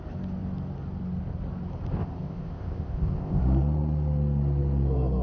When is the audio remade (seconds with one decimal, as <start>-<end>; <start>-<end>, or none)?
2.0-3.4